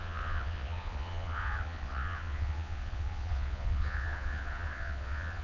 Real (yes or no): no